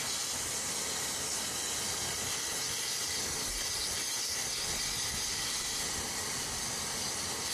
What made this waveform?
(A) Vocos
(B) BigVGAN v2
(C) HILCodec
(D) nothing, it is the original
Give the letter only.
D